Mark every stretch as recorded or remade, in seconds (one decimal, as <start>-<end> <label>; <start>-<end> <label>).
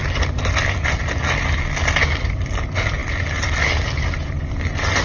0.0-5.0 recorded